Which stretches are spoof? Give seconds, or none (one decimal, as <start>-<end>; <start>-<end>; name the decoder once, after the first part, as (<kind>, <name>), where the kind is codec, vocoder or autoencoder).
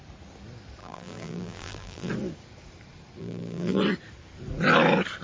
0.8-2.1 (vocoder, BigVGAN v2); 3.2-3.8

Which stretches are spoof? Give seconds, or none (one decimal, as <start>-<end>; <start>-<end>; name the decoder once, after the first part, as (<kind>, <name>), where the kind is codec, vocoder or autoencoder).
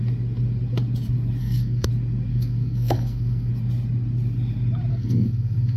1.4-1.9 (codec, SNAC); 2.3-3.5; 4.9-5.8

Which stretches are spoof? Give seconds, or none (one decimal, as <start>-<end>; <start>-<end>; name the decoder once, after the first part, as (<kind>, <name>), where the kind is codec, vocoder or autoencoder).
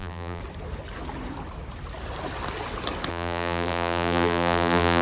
0.0-0.4 (vocoder, BigVGAN v2); 3.1-5.0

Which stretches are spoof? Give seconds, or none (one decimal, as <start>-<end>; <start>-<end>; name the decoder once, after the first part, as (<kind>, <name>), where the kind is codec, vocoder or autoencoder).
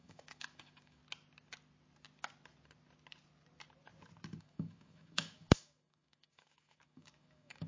0.0-1.0 (autoencoder, DAC-VAE); 4.4-7.7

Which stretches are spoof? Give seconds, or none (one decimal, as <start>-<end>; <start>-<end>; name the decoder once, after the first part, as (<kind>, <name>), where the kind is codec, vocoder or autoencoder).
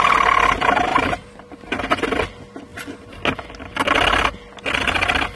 0.9-1.8 (vocoder, BigVGAN v2)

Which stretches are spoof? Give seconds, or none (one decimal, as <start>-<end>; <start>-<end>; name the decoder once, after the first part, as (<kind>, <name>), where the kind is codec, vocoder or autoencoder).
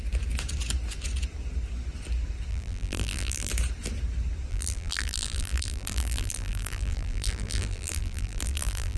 2.5-3.5 (vocoder, BigVGAN v2); 4.5-9.0